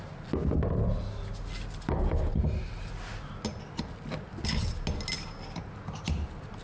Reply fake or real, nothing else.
real